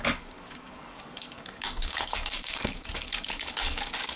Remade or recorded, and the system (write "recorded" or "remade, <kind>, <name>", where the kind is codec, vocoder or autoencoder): remade, codec, DAC